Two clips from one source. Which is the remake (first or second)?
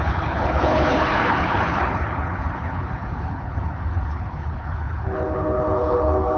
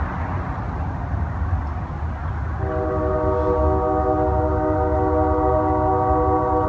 first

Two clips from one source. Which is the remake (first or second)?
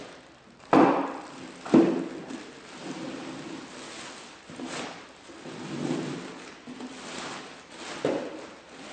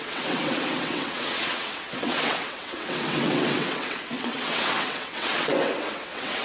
second